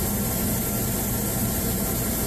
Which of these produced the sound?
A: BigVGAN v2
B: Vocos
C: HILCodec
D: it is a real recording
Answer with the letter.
D